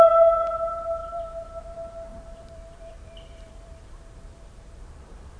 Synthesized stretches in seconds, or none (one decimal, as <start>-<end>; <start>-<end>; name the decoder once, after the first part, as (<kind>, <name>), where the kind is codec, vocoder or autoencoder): 1.0-1.6 (vocoder, BigVGAN v2); 2.1-5.4